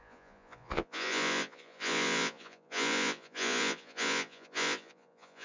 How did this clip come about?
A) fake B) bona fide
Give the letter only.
A